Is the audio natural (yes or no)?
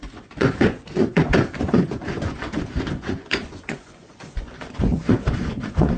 no